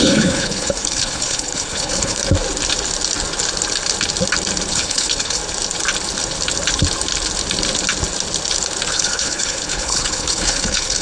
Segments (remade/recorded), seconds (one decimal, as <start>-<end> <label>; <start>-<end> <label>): 0.0-2.2 remade; 2.2-4.7 recorded; 4.7-5.4 remade; 5.4-8.9 recorded; 8.9-11.0 remade